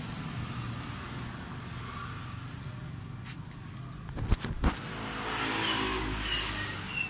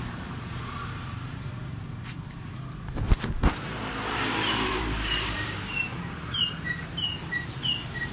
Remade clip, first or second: second